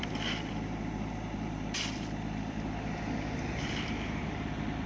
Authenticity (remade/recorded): remade